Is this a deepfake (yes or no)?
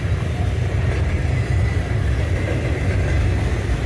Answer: no